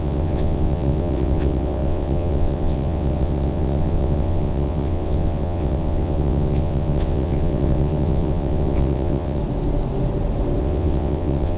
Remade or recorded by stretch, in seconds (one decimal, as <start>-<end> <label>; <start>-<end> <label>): 0.0-9.4 remade; 9.4-10.6 recorded; 10.6-11.6 remade